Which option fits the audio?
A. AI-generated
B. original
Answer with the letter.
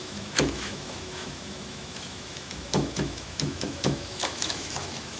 A